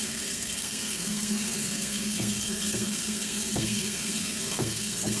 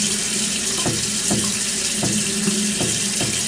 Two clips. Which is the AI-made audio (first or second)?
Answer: first